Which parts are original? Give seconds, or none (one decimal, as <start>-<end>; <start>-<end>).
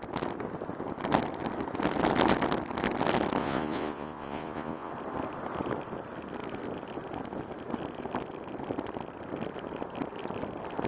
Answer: 0.0-3.4; 4.9-10.9